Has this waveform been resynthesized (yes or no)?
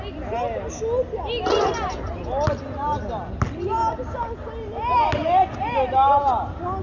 no